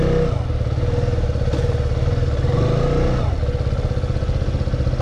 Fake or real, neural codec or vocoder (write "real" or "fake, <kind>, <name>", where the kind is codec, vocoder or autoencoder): real